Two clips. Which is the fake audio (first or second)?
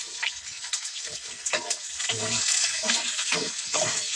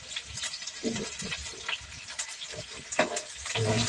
first